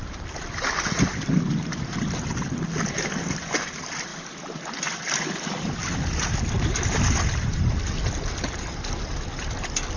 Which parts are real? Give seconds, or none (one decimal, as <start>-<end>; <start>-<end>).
0.0-10.0